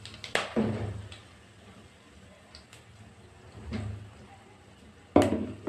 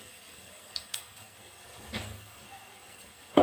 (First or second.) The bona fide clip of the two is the first